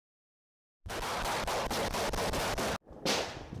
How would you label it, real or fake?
real